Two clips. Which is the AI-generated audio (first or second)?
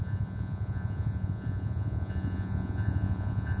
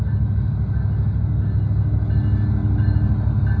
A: first